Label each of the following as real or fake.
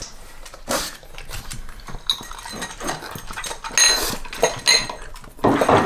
real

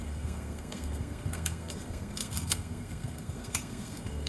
fake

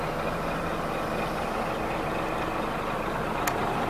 real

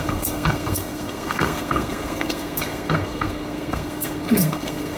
fake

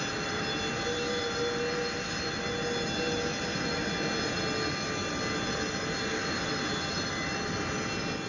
real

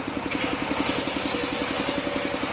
real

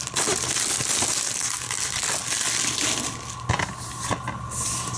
real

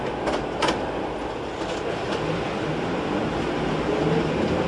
real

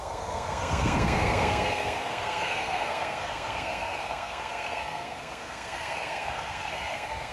fake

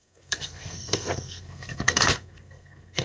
fake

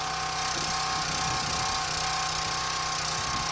real